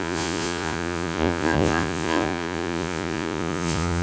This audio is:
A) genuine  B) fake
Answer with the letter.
B